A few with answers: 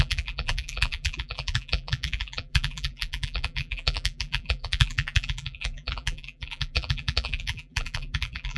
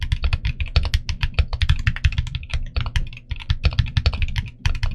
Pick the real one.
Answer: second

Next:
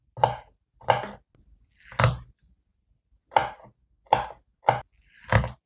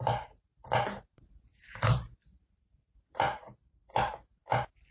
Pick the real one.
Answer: first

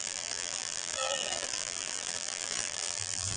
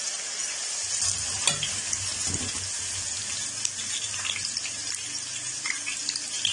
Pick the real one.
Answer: second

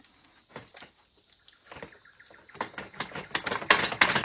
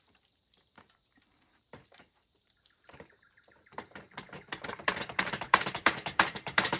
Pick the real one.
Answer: first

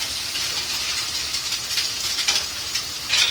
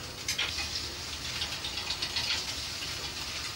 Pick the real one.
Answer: second